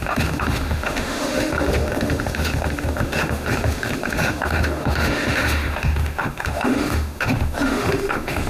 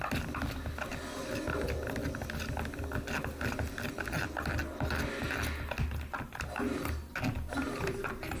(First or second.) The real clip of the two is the second